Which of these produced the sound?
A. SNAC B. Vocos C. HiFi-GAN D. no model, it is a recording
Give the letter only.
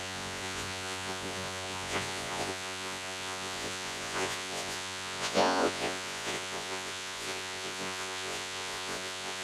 B